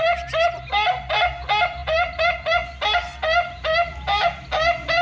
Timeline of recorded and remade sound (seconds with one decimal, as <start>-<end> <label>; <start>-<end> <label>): 0.0-1.8 recorded; 1.8-2.4 remade; 2.4-5.0 recorded